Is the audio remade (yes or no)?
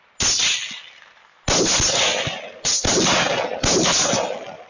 no